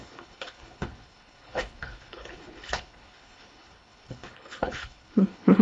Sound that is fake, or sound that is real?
fake